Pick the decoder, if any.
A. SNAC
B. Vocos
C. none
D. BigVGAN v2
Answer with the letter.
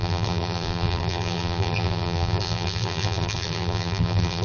D